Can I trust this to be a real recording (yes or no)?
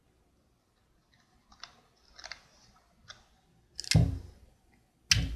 yes